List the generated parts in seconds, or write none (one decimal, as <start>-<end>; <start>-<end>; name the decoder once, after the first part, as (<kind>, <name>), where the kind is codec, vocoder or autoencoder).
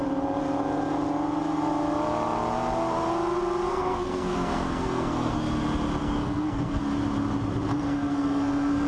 3.7-5.4 (codec, SNAC); 6.0-6.8; 7.7-8.9